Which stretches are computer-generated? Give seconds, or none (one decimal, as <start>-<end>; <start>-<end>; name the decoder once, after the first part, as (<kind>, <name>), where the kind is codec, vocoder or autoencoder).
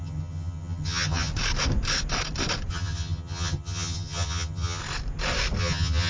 0.0-1.3 (vocoder, HiFi-GAN); 2.7-4.8; 5.6-6.1